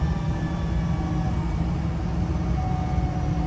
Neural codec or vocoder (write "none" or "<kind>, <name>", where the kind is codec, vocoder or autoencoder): none